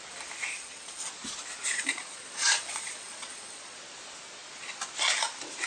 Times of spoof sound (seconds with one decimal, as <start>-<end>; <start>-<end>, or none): 0.5-1.1; 1.7-3.8